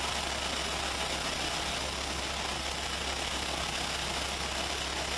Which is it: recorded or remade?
recorded